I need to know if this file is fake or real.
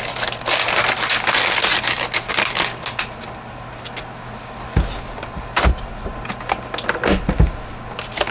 real